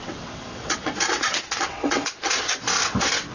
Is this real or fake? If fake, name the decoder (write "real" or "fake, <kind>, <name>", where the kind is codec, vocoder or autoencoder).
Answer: fake, vocoder, WaveNeXt